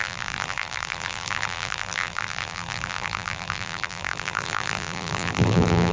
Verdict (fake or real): fake